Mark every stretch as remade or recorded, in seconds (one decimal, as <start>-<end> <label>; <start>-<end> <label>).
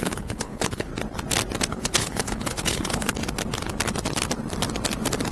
0.0-0.9 remade; 0.9-1.7 recorded; 1.7-3.2 remade; 3.2-5.3 recorded